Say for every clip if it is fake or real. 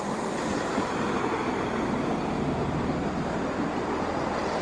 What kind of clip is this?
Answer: real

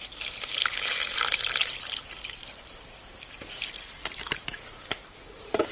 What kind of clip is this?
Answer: fake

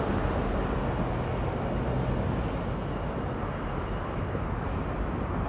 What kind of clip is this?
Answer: real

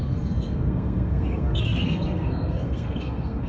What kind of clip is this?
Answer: fake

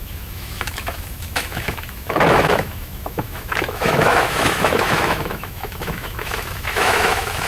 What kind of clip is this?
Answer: fake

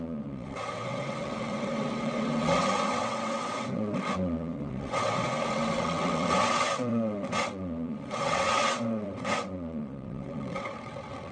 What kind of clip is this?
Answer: fake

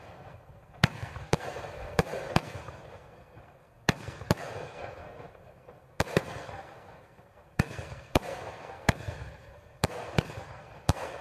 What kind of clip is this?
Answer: fake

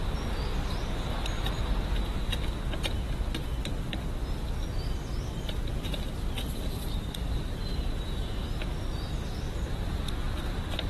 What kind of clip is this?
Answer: real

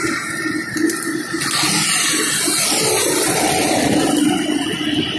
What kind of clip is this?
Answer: real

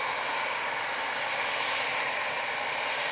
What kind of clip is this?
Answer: real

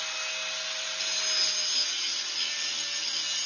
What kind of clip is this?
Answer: real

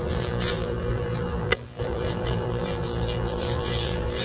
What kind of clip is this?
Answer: fake